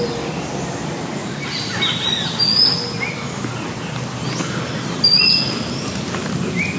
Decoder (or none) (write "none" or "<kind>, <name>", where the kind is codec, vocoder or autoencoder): none